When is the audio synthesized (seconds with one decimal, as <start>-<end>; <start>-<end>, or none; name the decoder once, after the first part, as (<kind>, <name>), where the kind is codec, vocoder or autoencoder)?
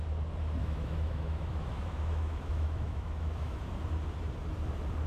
0.6-3.7 (autoencoder, DAC-VAE)